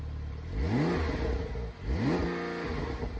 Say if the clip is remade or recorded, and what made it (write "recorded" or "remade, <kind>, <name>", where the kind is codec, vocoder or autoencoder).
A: recorded